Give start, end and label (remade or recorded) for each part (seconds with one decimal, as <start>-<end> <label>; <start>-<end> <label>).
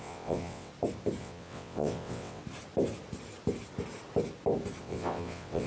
0.0-0.7 remade; 0.7-1.2 recorded; 1.2-2.4 remade; 2.4-4.8 recorded; 4.8-5.7 remade